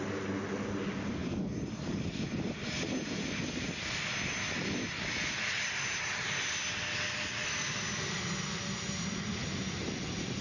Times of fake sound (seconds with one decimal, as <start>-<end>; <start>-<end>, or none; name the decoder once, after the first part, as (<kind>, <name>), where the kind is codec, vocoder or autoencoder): none